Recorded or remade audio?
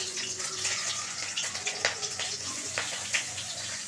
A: remade